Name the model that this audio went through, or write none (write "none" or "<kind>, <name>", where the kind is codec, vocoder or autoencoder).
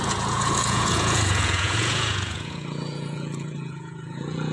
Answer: vocoder, Vocos